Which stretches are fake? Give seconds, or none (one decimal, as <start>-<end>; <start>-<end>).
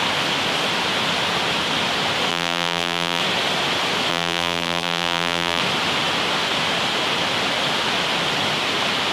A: 2.3-3.2; 4.1-5.6